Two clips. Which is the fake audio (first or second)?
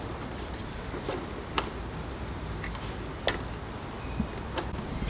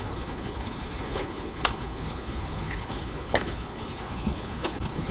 second